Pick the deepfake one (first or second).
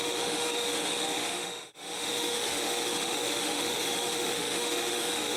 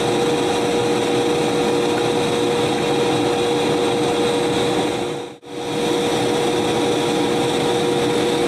first